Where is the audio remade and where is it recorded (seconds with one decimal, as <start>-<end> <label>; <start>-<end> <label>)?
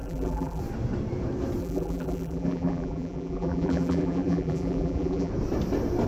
0.0-0.6 remade; 0.6-1.6 recorded; 1.6-5.3 remade; 5.3-6.1 recorded